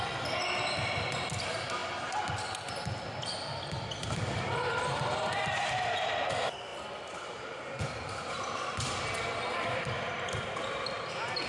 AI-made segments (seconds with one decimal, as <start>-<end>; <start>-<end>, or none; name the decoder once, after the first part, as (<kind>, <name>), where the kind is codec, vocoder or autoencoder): none